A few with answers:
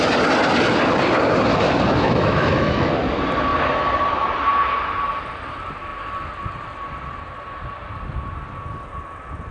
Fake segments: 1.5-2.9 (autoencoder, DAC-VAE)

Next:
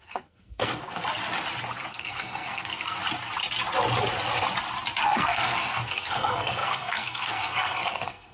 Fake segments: 0.0-1.0 (codec, SNAC); 1.9-3.0; 5.0-8.3

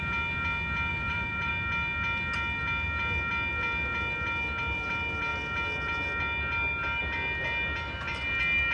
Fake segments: 0.9-1.5 (vocoder, BigVGAN v2)

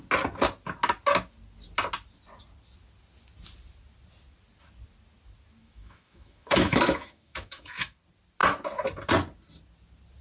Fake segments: 5.6-8.0 (autoencoder, DAC-VAE)

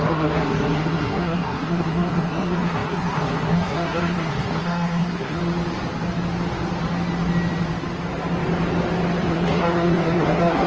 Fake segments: 0.0-5.4 (codec, SNAC); 9.3-10.7

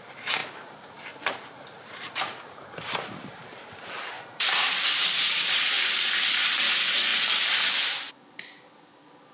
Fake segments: 0.4-5.6 (vocoder, BigVGAN v2)

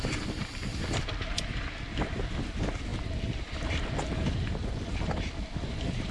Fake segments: 0.0-0.7 (vocoder, BigVGAN v2); 2.5-2.9; 4.9-6.1

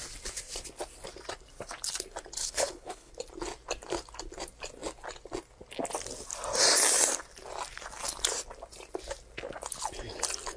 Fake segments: 2.4-3.1 (codec, HILCodec)